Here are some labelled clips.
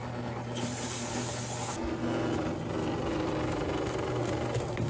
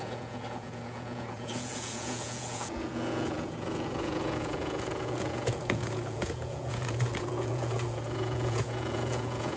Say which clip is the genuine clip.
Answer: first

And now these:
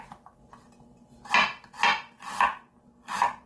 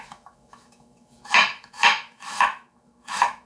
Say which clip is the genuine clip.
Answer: first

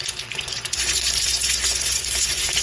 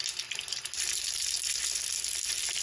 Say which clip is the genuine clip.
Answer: second